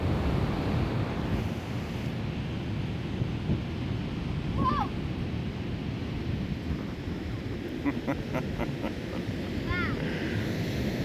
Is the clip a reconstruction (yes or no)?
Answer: no